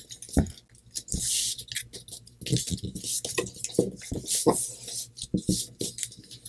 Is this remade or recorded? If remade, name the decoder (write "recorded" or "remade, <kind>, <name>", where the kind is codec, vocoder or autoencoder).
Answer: recorded